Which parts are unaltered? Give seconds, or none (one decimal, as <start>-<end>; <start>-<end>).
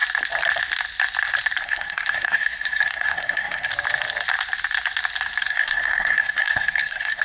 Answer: 0.0-1.6; 3.7-5.5